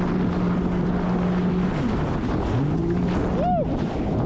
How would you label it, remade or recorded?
recorded